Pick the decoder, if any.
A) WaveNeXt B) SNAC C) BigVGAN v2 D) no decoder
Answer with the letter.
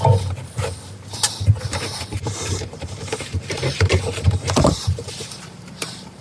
C